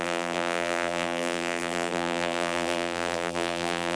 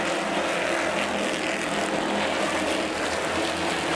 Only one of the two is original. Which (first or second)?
second